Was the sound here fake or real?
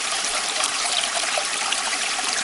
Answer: fake